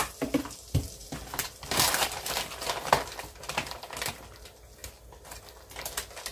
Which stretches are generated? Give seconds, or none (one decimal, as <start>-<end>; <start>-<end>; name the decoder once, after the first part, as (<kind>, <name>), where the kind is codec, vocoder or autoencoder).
1.0-3.4 (vocoder, BigVGAN v2); 4.8-5.4